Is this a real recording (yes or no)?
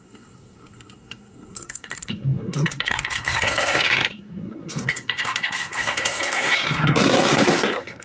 no